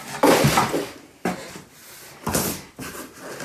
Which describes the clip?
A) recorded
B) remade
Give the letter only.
A